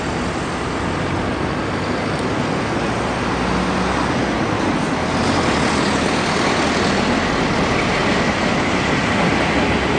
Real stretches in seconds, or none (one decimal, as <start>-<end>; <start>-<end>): 0.0-8.0; 9.5-10.0